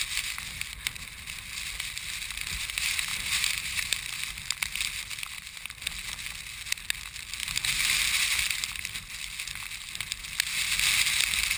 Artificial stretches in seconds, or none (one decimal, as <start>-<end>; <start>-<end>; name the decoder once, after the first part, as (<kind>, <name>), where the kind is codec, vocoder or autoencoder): 3.1-4.0 (vocoder, BigVGAN v2); 7.4-8.0